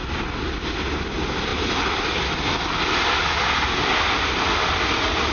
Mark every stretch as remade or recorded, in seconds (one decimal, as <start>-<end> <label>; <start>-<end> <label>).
0.0-5.3 recorded